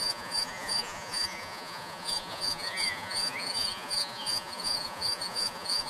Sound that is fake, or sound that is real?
fake